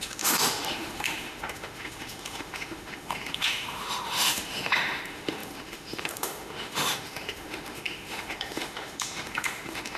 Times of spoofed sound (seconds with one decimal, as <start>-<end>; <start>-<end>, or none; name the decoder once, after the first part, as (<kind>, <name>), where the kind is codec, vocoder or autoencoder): 0.0-10.0 (autoencoder, DAC-VAE)